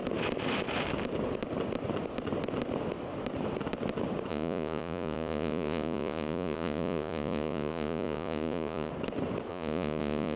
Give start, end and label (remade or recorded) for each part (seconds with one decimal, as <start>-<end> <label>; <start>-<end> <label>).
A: 0.0-4.3 recorded; 4.3-8.9 remade; 8.9-9.5 recorded; 9.5-10.4 remade